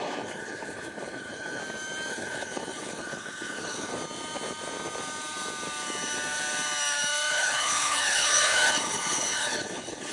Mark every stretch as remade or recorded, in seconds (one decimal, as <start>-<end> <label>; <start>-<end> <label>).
0.0-1.6 remade; 1.6-2.1 recorded; 2.1-3.9 remade; 3.9-7.3 recorded; 7.3-10.1 remade